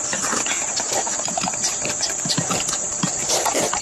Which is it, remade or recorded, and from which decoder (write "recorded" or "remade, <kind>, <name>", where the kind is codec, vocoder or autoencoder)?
recorded